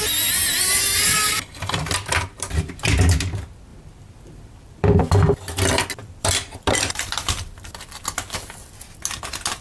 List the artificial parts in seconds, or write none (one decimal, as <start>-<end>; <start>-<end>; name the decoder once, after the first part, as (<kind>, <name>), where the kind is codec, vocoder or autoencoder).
0.4-2.2 (vocoder, BigVGAN v2); 3.7-5.0; 6.0-8.0